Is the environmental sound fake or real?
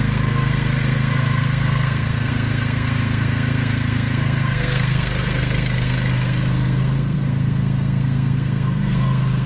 fake